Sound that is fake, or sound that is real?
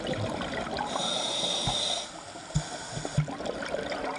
real